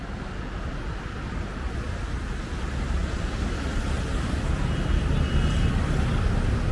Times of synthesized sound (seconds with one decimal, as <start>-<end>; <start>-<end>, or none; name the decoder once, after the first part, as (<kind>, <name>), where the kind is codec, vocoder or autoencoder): none